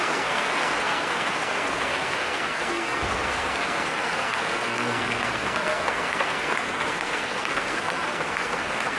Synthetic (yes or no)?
yes